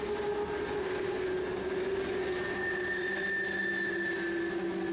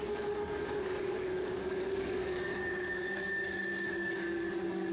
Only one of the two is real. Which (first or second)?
first